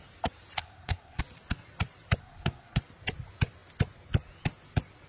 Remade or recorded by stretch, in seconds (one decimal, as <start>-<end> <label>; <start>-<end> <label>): 0.0-0.6 recorded; 0.6-1.2 remade; 1.2-2.2 recorded; 2.2-2.8 remade; 2.8-5.1 recorded

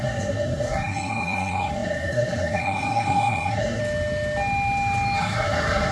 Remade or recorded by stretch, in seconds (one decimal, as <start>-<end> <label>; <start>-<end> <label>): 0.0-3.8 remade; 3.8-5.2 recorded; 5.2-5.9 remade

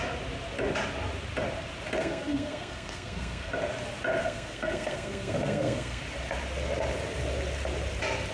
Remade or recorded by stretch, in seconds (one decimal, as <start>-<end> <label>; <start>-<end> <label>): 0.0-2.0 recorded; 2.0-3.5 remade; 3.5-4.2 recorded; 4.2-6.0 remade; 6.0-8.3 recorded

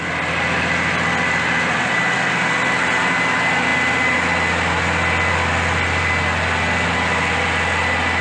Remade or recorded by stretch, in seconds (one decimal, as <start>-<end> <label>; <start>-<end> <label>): 0.0-8.2 recorded

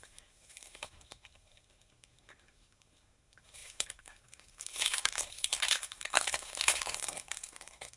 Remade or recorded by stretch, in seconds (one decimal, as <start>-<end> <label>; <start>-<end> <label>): 0.0-8.0 remade

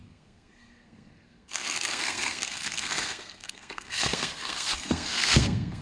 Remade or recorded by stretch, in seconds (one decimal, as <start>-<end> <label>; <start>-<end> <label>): 0.0-5.8 remade

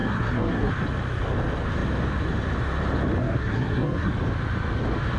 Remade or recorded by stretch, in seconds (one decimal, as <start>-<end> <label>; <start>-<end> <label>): 0.0-0.7 remade; 0.7-3.2 recorded; 3.2-4.1 remade; 4.1-5.2 recorded

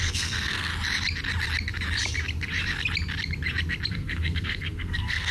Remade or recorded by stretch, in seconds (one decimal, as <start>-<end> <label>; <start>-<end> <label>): 0.0-0.7 remade; 0.7-3.9 recorded; 3.9-5.3 remade